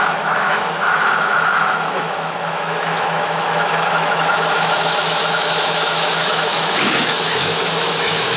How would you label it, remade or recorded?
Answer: remade